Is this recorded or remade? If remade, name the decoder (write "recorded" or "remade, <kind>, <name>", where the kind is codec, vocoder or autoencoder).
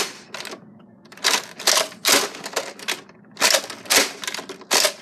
recorded